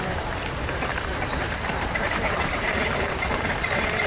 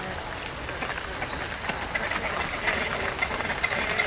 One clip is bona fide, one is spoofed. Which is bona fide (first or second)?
second